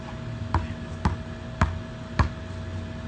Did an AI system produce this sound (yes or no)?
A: no